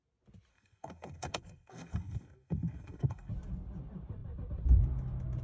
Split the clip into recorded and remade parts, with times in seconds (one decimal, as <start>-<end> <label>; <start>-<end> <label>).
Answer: 0.0-0.5 recorded; 0.5-3.3 remade; 3.3-5.4 recorded